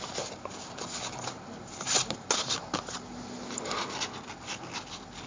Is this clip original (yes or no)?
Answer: yes